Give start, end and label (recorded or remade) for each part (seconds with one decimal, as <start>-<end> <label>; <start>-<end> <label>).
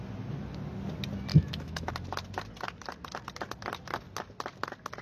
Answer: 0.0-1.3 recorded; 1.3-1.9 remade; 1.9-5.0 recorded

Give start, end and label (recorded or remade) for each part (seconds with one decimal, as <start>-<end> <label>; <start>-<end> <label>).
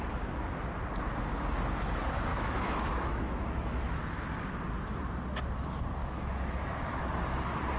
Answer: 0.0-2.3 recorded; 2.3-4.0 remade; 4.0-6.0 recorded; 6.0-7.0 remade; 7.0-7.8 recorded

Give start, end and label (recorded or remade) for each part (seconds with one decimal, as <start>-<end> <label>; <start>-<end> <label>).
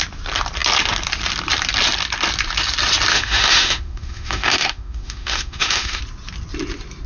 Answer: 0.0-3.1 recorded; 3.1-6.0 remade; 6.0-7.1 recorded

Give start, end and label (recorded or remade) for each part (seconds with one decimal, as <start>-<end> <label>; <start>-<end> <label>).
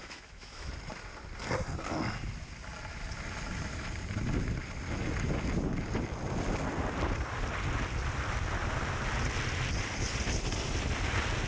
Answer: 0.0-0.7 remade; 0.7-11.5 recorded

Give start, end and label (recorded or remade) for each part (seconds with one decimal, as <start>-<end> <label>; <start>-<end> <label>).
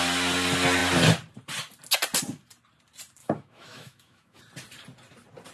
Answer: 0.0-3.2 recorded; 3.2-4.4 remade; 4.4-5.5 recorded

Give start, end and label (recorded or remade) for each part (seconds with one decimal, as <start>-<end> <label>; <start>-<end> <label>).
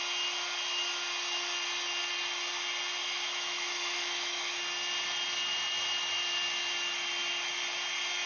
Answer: 0.0-3.0 recorded; 3.0-4.6 remade; 4.6-8.3 recorded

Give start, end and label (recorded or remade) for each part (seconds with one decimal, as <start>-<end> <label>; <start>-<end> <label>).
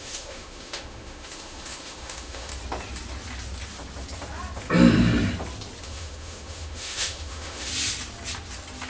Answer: 0.0-2.5 remade; 2.5-5.8 recorded; 5.8-7.7 remade; 7.7-8.9 recorded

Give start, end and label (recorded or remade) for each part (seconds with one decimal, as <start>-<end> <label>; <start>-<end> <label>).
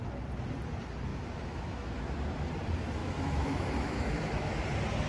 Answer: 0.0-1.1 recorded; 1.1-2.0 remade; 2.0-3.0 recorded; 3.0-4.6 remade; 4.6-5.1 recorded